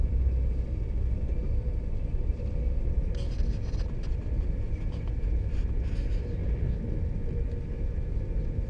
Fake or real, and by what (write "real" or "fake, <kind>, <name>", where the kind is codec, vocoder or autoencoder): real